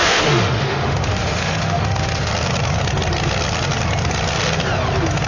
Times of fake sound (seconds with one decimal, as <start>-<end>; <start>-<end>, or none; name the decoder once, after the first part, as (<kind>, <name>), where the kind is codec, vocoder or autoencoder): 0.0-2.3 (autoencoder, DAC-VAE)